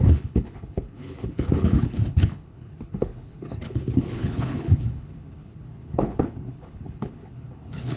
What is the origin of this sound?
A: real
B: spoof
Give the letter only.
B